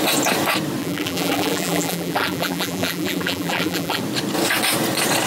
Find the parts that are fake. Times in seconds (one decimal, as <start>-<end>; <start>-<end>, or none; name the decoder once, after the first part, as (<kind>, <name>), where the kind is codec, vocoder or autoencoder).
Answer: 0.8-4.0 (vocoder, BigVGAN v2)